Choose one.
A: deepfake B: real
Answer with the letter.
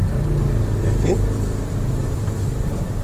B